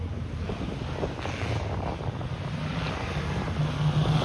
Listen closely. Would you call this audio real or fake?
real